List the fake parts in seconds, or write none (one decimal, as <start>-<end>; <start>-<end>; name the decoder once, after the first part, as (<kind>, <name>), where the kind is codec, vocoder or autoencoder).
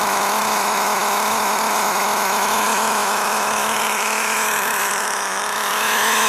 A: 0.0-6.3 (autoencoder, DAC-VAE)